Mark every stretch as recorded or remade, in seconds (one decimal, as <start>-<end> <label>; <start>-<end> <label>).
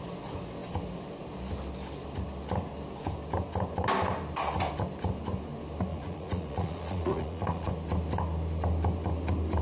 0.0-5.9 recorded; 5.9-7.7 remade; 7.7-9.6 recorded